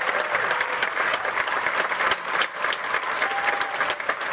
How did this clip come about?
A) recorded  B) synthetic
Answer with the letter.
A